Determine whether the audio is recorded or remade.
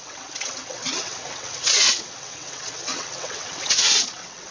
remade